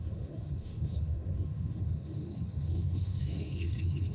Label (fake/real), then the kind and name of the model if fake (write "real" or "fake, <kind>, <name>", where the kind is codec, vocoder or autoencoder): fake, autoencoder, DAC-VAE